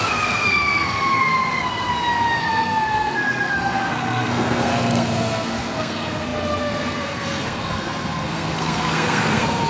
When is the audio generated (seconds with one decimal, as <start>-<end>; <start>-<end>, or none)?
0.0-1.9; 2.4-9.7